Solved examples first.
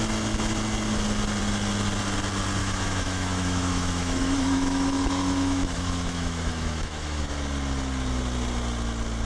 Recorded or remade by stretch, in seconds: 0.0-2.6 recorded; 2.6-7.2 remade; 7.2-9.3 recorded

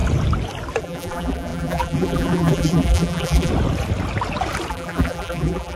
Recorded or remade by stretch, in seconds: 0.0-0.8 recorded; 0.8-3.5 remade; 3.5-4.7 recorded; 4.7-5.8 remade